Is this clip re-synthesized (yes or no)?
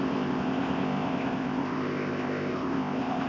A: yes